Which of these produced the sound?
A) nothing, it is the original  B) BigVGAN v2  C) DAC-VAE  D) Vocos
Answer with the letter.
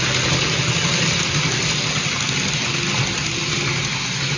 A